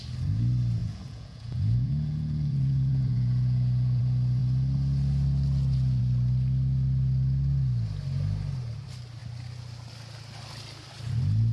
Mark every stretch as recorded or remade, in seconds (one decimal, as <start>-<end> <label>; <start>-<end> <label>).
0.0-0.8 recorded; 0.8-4.0 remade; 4.0-11.5 recorded